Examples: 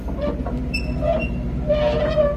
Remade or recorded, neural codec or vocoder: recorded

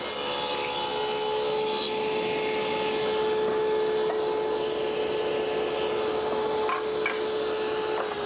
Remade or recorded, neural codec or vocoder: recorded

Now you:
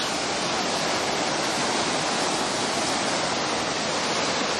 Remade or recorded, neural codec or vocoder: recorded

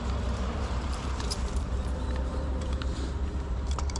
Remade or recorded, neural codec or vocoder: remade, vocoder, BigVGAN v2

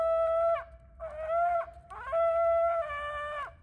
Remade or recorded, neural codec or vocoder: recorded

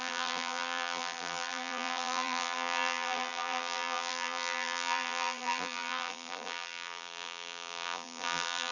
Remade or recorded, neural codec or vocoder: remade, vocoder, BigVGAN v2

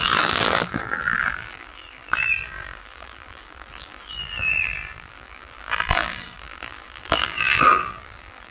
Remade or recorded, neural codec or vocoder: remade, vocoder, BigVGAN v2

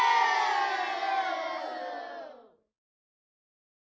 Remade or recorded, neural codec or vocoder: recorded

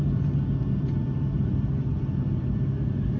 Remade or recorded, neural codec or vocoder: remade, vocoder, BigVGAN v2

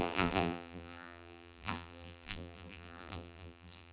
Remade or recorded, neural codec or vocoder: remade, vocoder, BigVGAN v2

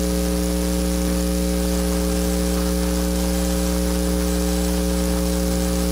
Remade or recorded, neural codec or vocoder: recorded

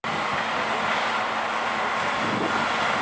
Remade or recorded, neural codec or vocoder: recorded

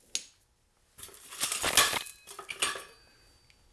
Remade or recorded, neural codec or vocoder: recorded